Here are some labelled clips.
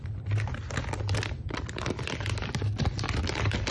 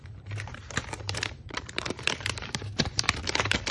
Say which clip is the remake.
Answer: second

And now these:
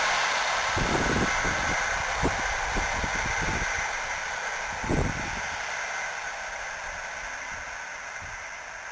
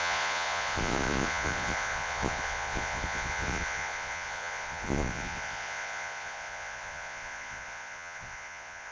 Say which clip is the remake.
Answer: second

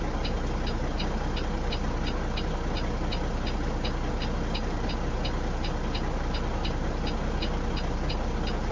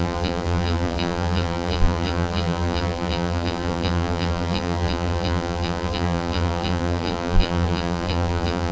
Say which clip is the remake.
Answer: second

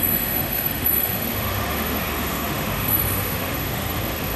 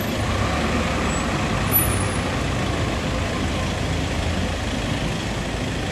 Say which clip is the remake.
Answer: first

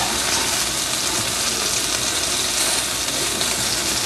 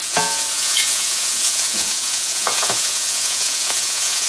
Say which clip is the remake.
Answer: second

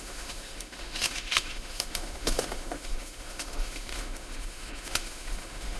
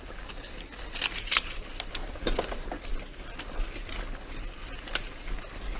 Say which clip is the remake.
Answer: first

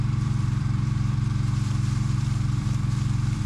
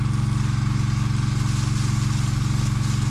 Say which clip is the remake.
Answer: first